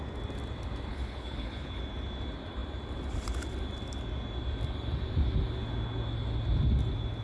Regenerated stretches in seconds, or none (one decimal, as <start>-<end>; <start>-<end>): 0.9-1.8